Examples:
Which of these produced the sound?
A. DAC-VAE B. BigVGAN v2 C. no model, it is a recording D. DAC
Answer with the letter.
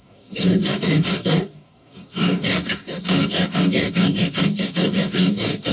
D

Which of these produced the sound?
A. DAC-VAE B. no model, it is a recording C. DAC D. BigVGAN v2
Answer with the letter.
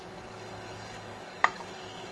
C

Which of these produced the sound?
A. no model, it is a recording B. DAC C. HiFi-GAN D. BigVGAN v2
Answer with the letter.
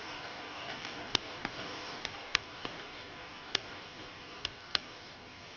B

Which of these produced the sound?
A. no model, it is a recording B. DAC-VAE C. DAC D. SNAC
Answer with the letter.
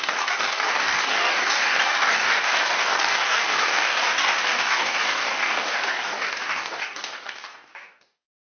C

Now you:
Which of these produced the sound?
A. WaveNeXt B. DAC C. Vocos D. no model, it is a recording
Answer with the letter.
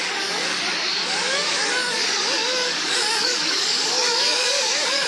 B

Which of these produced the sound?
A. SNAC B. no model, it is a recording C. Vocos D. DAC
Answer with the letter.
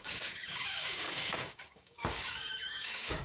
D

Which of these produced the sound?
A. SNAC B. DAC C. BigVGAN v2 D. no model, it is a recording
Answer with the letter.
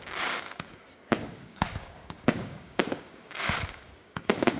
B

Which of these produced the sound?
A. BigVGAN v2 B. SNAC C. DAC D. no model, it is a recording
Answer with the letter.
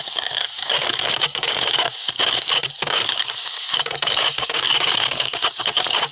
C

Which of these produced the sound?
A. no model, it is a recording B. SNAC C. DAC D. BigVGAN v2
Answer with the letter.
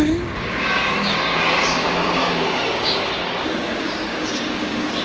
C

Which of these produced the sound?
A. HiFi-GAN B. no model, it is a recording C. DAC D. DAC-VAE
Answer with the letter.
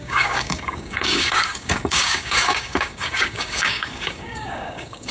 C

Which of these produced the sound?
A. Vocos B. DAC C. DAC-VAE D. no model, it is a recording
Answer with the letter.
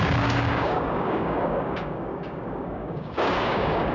B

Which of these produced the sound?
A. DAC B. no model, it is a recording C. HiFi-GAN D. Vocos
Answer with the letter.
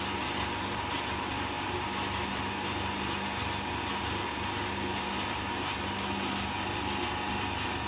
B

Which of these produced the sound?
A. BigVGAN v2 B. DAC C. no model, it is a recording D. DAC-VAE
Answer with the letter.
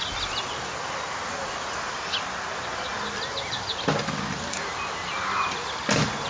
C